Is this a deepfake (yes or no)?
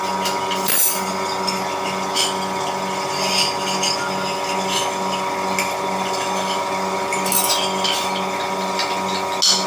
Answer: no